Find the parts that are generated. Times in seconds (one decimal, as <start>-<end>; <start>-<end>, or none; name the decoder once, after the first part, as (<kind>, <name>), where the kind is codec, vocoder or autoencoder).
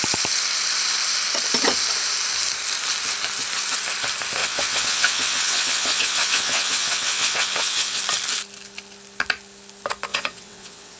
4.4-8.0 (vocoder, WaveNeXt); 10.1-11.0